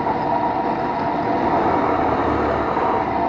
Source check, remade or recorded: recorded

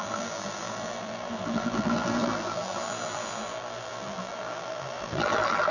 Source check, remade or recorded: remade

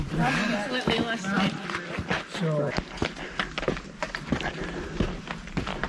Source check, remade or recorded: recorded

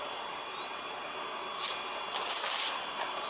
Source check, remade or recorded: recorded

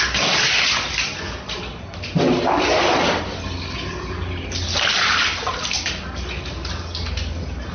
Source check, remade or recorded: recorded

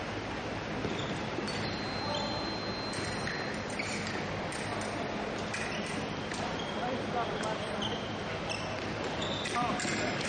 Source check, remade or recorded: recorded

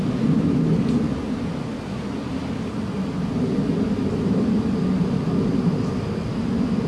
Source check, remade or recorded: recorded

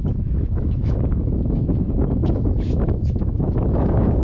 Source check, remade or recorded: remade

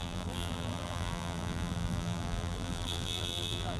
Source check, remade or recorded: remade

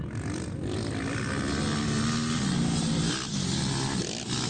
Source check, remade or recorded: recorded